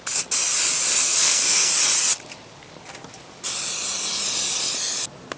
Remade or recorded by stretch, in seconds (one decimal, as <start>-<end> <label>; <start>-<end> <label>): 0.0-1.0 recorded; 1.0-1.7 remade; 1.7-5.4 recorded